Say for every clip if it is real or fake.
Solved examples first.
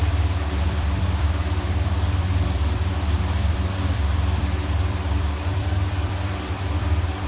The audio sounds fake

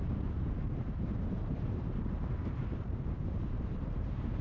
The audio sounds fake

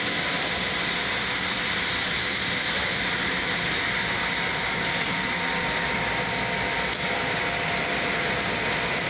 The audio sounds real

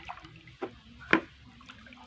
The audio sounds real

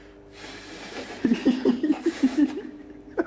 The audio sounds fake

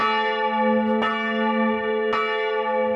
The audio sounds real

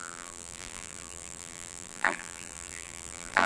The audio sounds fake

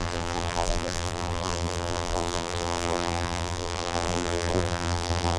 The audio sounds fake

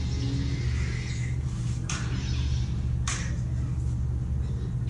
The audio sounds real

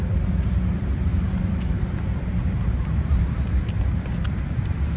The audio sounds fake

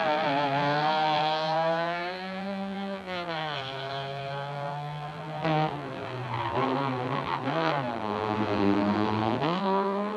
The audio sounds fake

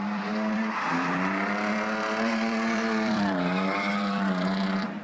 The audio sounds fake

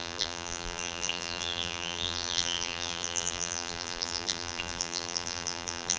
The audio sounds fake